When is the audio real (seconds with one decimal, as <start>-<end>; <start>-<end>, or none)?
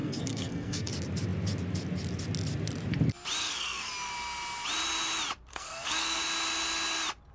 0.9-3.4; 3.9-5.5; 6.2-7.3